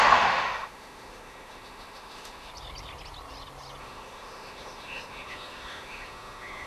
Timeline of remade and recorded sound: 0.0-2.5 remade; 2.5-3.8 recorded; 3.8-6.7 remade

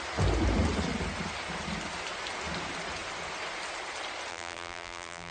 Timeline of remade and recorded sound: 0.0-4.3 recorded; 4.3-5.3 remade

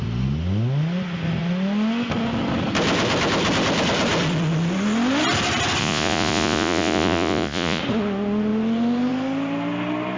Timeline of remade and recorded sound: 0.0-5.8 recorded; 5.8-7.8 remade; 7.8-10.2 recorded

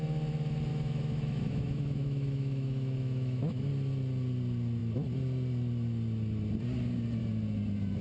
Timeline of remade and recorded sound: 0.0-0.7 recorded; 0.7-3.7 remade; 3.7-8.0 recorded

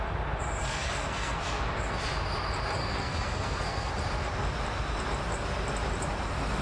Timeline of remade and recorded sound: 0.0-0.6 recorded; 0.6-2.0 remade; 2.0-2.8 recorded; 2.8-3.9 remade; 3.9-6.6 recorded

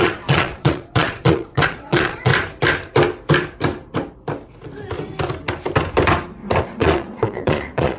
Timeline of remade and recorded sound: 0.0-2.3 remade; 2.3-6.6 recorded; 6.6-8.0 remade

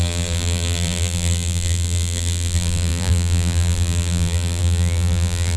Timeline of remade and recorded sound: 0.0-5.6 remade

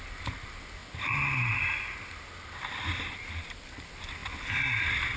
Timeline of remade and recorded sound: 0.0-5.2 recorded